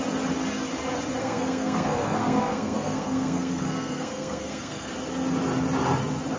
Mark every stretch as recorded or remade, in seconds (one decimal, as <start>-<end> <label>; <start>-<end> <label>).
0.0-1.2 recorded; 1.2-4.9 remade; 4.9-6.4 recorded